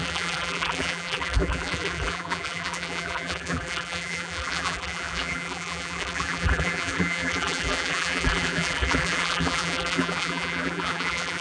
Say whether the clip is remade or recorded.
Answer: remade